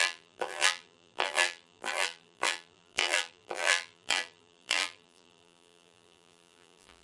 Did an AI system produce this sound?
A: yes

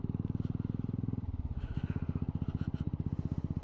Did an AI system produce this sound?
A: yes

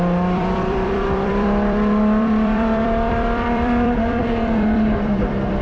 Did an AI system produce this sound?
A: yes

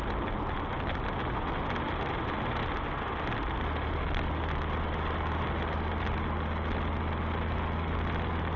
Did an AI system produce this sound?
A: yes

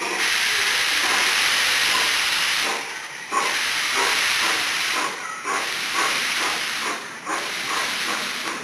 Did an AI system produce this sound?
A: yes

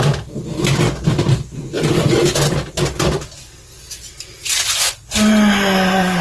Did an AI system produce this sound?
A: no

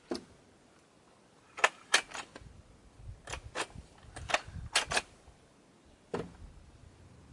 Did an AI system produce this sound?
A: no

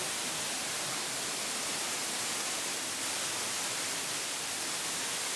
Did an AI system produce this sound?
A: yes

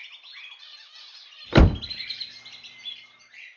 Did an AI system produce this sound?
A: yes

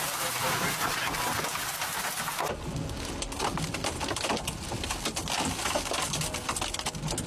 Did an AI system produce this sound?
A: no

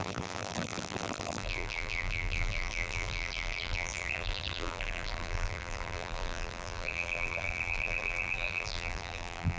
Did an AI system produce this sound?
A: yes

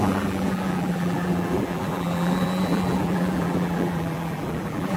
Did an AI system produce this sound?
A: yes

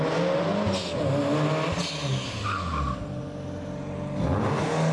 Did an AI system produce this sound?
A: no